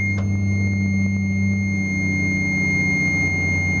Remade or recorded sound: recorded